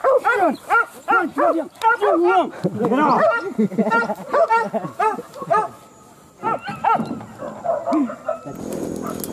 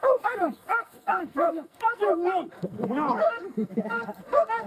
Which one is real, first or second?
first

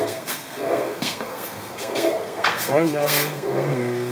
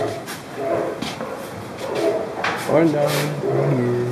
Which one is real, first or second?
second